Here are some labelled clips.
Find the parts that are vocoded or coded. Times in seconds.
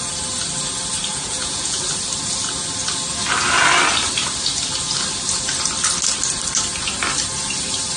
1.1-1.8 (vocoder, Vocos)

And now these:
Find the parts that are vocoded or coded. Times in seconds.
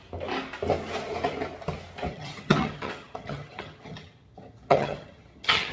2.1-5.7 (vocoder, HiFi-GAN)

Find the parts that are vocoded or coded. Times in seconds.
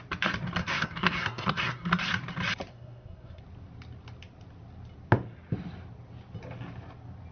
0.6-1.9 (codec, SNAC); 2.7-3.4